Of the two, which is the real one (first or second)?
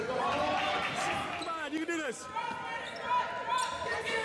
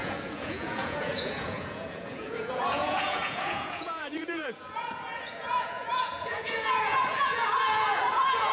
first